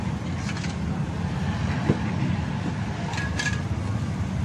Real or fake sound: real